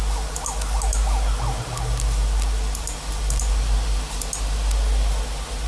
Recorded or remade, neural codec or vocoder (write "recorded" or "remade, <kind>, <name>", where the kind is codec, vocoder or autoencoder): recorded